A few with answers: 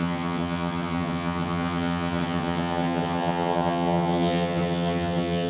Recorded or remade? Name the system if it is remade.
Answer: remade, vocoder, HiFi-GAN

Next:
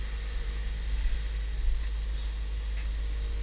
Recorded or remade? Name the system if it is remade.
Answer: recorded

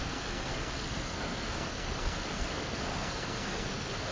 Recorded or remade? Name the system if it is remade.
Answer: remade, codec, SNAC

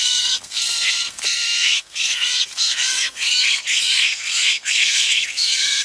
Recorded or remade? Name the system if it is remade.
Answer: remade, codec, SNAC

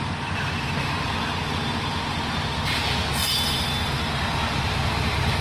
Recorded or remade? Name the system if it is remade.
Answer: recorded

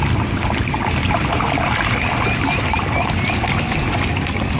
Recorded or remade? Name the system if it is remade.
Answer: recorded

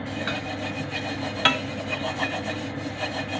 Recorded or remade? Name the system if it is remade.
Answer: recorded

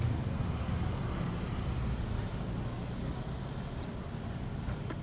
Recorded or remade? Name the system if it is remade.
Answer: recorded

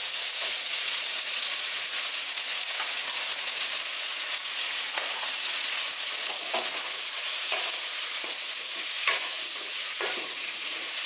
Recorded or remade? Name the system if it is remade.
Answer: remade, vocoder, Vocos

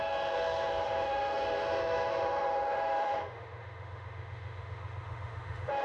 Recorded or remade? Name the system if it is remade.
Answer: remade, autoencoder, DAC-VAE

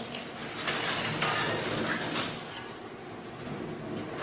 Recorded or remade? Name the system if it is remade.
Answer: recorded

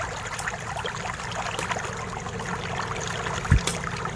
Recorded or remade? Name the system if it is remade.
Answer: recorded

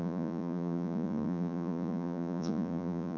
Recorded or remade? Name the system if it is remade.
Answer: remade, vocoder, Vocos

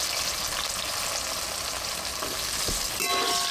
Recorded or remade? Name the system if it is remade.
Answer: recorded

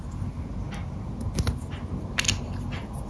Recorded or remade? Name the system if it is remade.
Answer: recorded